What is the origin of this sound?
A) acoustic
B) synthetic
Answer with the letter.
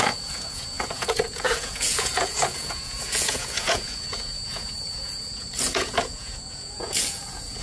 B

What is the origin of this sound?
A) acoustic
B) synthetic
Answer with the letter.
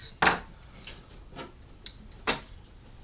A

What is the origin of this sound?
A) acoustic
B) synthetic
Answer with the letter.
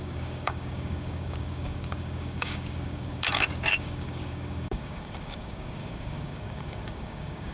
B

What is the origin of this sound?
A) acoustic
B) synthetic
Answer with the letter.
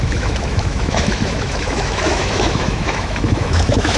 B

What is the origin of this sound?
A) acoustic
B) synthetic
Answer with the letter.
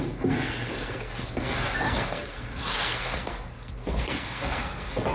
B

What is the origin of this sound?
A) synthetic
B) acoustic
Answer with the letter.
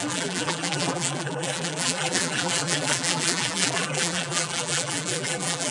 A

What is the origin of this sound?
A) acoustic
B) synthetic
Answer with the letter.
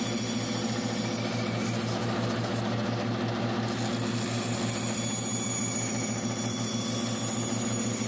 A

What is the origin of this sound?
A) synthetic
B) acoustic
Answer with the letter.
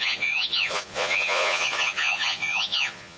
A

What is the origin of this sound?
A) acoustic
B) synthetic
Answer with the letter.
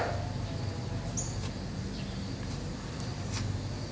A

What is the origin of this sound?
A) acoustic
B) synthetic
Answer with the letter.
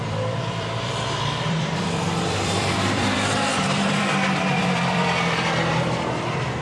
B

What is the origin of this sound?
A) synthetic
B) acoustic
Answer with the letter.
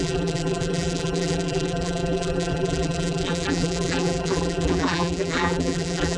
A